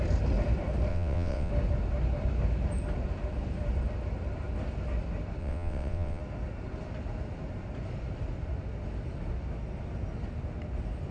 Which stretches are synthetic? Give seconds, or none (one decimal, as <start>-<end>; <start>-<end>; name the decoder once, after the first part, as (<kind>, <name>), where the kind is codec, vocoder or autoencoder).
0.9-1.5 (vocoder, WaveNeXt); 5.4-6.2